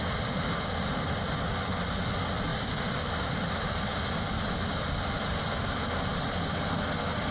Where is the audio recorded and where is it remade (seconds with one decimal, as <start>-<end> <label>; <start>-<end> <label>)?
0.0-7.3 recorded